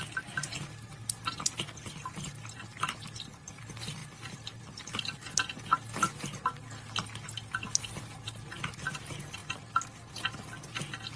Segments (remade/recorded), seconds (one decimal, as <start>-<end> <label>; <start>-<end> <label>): 0.0-11.2 recorded